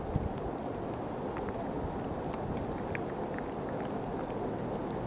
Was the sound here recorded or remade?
recorded